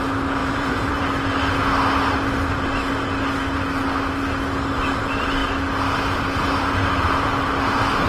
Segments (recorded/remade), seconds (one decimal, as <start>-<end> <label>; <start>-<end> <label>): 0.0-0.4 recorded; 0.4-1.0 remade; 1.0-8.1 recorded